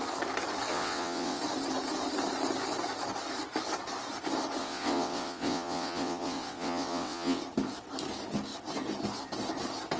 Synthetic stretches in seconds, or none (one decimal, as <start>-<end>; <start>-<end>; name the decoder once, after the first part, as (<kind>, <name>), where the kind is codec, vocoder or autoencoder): 0.7-1.4 (vocoder, WaveNeXt); 4.6-7.4